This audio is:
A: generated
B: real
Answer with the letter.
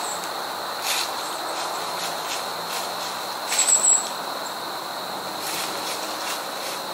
B